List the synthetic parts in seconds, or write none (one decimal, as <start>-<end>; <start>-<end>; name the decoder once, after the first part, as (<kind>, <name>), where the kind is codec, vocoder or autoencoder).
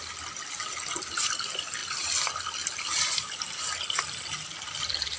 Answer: none